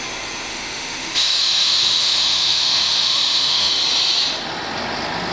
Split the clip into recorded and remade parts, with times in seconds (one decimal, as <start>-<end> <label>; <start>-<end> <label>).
0.0-0.5 recorded; 0.5-3.7 remade; 3.7-5.3 recorded